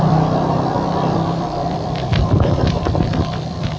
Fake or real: fake